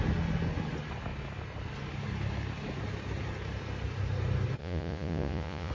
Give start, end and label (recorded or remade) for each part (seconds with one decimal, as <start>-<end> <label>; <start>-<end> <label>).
0.0-4.6 recorded; 4.6-5.7 remade